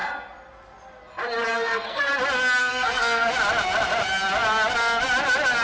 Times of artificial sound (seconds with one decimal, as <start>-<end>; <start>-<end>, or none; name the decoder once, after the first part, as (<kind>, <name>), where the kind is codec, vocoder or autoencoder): 1.5-2.1 (codec, SNAC); 2.6-3.3